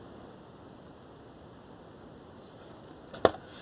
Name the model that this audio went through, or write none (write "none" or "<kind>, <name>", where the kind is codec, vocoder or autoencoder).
none